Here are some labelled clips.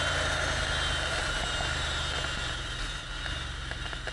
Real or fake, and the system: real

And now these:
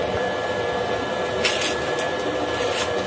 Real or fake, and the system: real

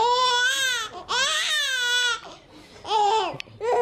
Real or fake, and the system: real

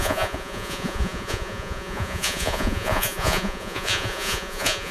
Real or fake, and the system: fake, vocoder, Vocos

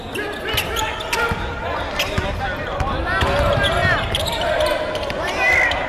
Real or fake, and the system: real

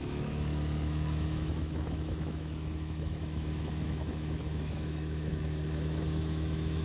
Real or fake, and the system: fake, autoencoder, DAC-VAE